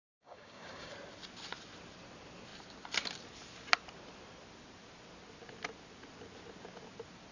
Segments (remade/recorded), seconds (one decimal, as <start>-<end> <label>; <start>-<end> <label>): 0.0-0.9 remade; 0.9-7.3 recorded

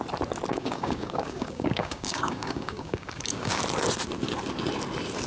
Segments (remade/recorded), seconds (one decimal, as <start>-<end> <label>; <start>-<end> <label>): 0.0-0.5 recorded; 0.5-3.6 remade; 3.6-5.3 recorded

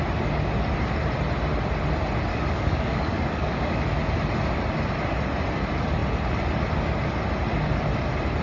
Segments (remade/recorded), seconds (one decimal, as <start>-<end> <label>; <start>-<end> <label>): 0.0-2.3 recorded; 2.3-3.8 remade; 3.8-8.4 recorded

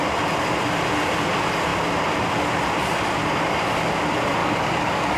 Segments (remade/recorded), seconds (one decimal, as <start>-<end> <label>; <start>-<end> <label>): 0.0-4.4 recorded; 4.4-5.2 remade

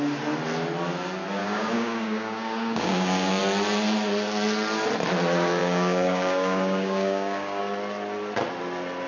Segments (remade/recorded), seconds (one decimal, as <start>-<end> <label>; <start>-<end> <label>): 0.0-1.4 recorded; 1.4-3.4 remade; 3.4-5.6 recorded; 5.6-7.6 remade; 7.6-9.1 recorded